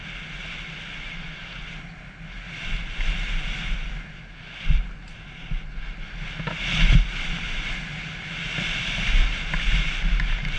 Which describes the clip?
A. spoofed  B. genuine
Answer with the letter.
B